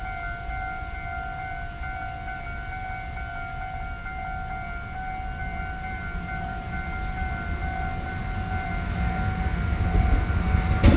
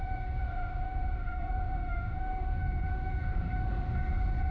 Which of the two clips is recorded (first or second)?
first